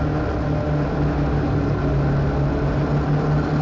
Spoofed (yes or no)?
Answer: no